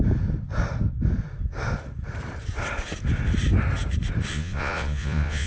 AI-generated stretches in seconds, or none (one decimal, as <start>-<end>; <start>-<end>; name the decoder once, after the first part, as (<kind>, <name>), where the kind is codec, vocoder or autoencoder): 4.3-5.5 (vocoder, Vocos)